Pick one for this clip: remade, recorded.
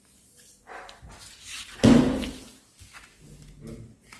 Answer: recorded